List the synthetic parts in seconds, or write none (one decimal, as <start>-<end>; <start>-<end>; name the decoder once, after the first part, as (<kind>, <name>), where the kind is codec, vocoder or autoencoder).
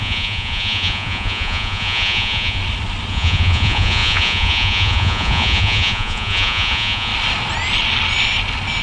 0.0-2.6 (vocoder, Vocos); 3.1-7.1